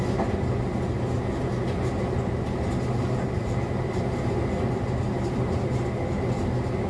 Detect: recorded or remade recorded